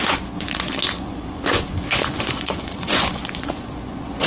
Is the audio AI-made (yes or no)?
yes